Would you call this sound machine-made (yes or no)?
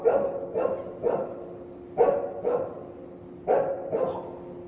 no